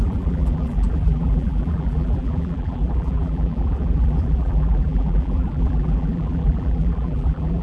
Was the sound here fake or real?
fake